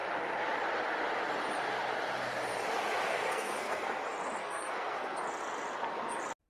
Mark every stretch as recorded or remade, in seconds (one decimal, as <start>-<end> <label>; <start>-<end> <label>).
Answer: 0.0-3.1 recorded; 3.1-4.0 remade; 4.0-4.4 recorded; 4.4-5.2 remade; 5.2-6.5 recorded